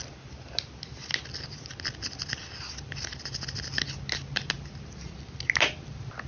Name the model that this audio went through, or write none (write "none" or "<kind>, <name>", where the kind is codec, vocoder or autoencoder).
none